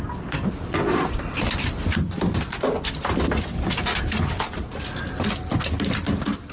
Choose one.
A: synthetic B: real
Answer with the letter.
B